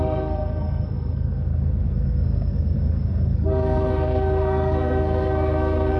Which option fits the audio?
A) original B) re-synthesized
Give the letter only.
B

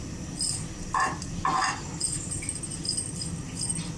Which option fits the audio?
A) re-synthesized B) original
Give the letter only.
B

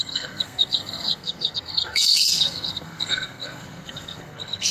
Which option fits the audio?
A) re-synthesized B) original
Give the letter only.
A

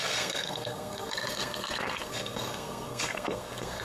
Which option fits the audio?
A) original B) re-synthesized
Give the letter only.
B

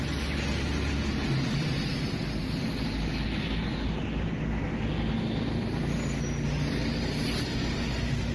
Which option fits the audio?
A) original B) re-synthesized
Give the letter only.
A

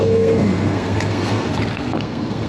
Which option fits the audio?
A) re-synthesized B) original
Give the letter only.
A